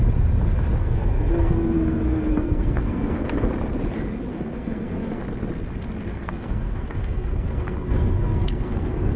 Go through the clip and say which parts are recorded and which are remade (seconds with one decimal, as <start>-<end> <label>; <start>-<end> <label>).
0.0-0.8 recorded; 0.8-3.5 remade; 3.5-4.3 recorded; 4.3-5.2 remade; 5.2-6.1 recorded; 6.1-9.2 remade